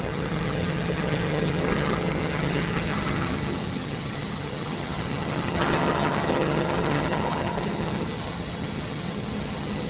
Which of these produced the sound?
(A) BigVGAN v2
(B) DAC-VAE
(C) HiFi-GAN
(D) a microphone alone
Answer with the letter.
C